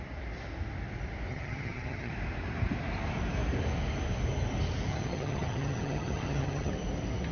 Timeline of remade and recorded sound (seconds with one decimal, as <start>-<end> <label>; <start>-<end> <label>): 0.0-1.3 recorded; 1.3-2.1 remade; 2.1-4.9 recorded; 4.9-6.7 remade; 6.7-7.3 recorded